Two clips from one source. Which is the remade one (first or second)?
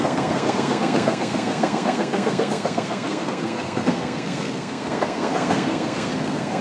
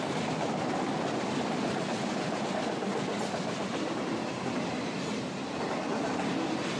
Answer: first